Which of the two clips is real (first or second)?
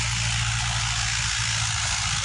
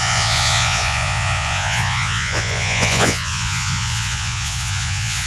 first